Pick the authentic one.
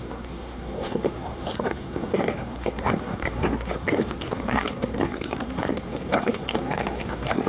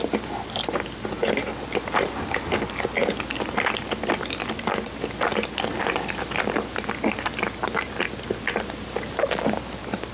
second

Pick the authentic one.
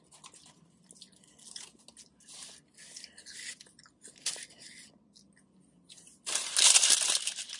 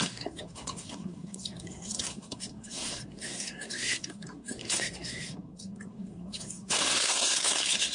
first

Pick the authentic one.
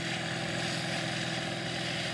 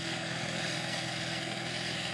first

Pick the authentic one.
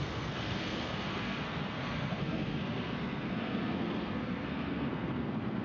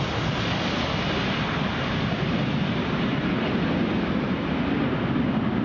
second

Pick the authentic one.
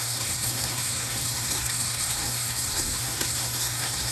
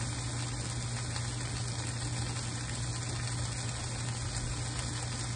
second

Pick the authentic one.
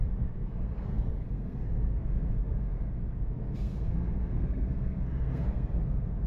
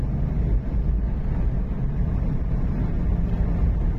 second